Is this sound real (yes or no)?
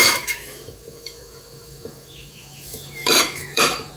no